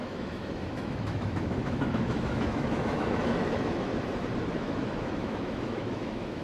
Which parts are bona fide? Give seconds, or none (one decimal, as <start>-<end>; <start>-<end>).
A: 3.9-4.5